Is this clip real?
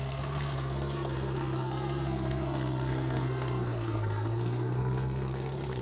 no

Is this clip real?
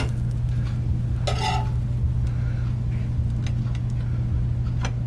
yes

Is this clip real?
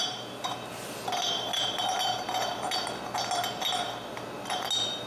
yes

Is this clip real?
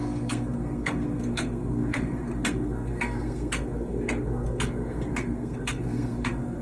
no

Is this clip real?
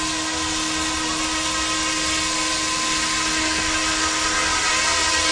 yes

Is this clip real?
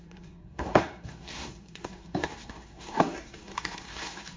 no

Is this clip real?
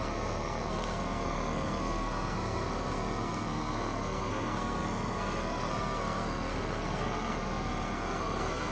no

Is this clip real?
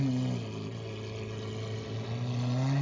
yes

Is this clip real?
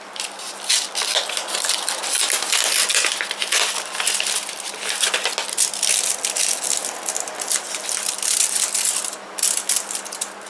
yes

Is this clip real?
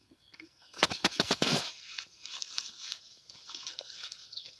no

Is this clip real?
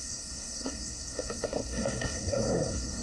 no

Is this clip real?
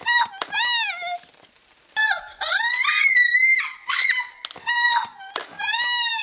yes